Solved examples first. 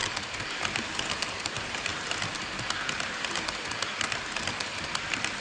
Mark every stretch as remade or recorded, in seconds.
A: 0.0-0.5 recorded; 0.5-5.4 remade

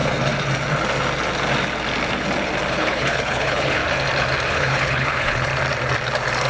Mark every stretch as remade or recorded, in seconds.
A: 0.0-2.7 recorded; 2.7-3.8 remade; 3.8-4.5 recorded; 4.5-5.5 remade; 5.5-6.5 recorded

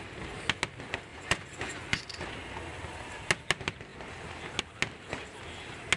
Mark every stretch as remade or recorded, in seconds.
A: 0.0-1.1 recorded; 1.1-2.0 remade; 2.0-6.0 recorded